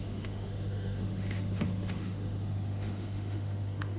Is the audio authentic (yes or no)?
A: no